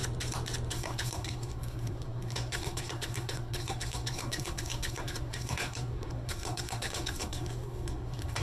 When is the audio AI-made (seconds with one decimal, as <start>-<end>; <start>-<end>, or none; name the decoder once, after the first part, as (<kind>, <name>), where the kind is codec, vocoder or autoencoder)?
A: 0.7-8.4 (codec, SNAC)